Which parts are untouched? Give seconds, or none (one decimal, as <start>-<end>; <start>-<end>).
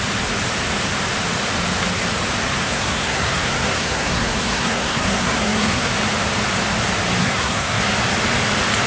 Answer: 0.0-2.6; 5.9-7.2; 7.8-8.9